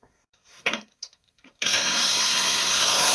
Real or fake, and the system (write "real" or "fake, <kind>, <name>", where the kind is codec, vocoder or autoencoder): fake, codec, SNAC